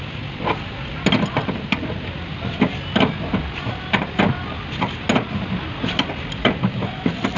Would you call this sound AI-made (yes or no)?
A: no